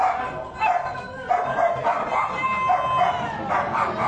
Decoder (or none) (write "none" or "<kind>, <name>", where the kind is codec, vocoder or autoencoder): none